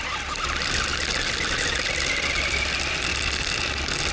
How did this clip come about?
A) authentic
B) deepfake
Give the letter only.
A